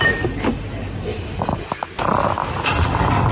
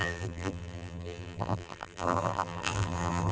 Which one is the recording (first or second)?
first